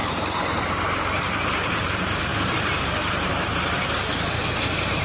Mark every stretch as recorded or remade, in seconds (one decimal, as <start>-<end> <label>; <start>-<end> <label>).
0.0-0.6 recorded; 0.6-5.0 remade